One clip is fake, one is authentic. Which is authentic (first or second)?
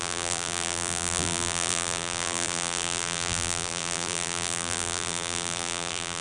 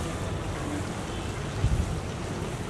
second